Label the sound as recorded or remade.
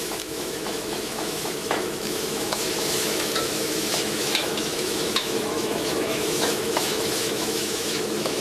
remade